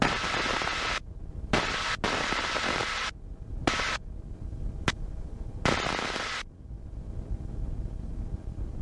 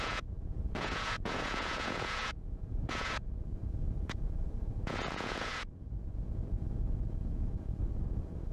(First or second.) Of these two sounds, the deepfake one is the second